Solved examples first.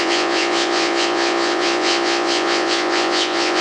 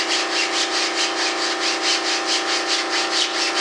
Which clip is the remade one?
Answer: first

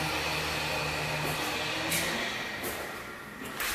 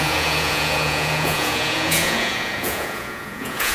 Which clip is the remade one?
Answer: second